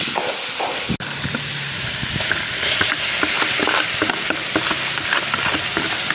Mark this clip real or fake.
real